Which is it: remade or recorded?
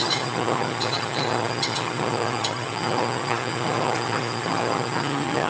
remade